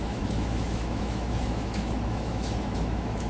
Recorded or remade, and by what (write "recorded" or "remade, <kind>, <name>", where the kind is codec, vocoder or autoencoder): remade, autoencoder, DAC-VAE